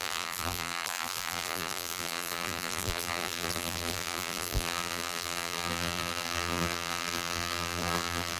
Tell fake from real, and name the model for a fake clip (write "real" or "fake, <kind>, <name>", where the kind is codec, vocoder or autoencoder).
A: fake, vocoder, BigVGAN v2